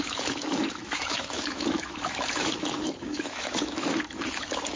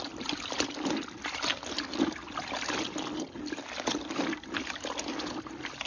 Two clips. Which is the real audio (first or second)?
second